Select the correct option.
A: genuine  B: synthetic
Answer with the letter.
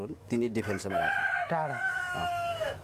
B